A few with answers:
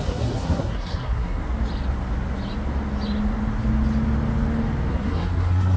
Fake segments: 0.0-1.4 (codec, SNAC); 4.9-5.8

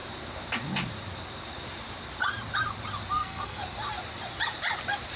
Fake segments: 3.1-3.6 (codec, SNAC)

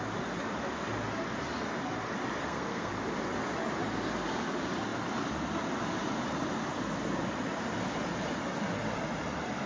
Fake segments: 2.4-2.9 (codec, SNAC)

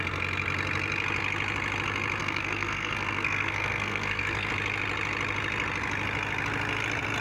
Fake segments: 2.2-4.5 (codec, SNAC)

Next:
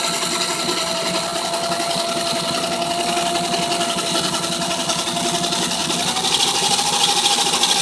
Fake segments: none

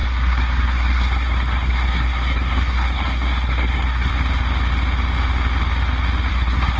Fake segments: 0.0-4.1 (codec, SNAC); 6.3-6.8

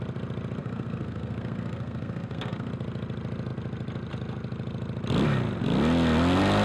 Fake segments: 0.6-2.7 (codec, SNAC)